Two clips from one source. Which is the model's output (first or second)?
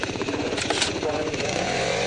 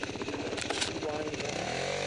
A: first